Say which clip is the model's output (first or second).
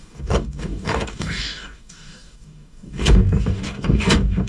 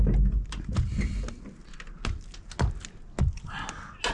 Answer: first